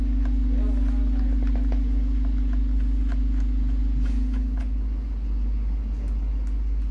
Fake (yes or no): no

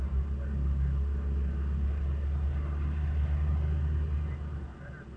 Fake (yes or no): no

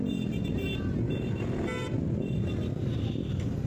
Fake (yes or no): no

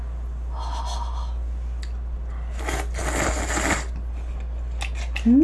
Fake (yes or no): no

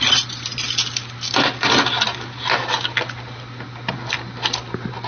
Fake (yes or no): no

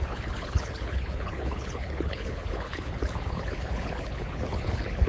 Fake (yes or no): yes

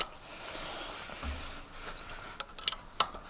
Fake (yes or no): no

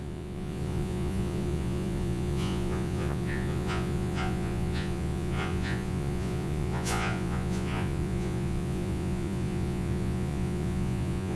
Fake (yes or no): yes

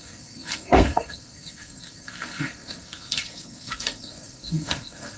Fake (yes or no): yes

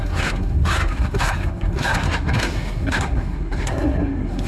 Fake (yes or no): yes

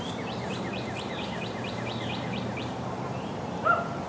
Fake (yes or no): yes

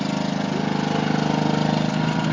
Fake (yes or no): no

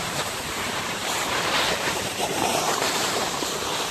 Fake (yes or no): yes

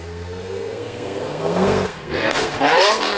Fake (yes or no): yes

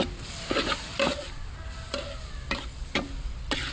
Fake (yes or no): no